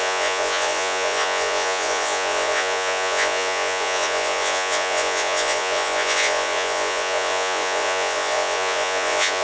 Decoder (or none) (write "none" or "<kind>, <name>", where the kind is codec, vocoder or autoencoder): vocoder, Vocos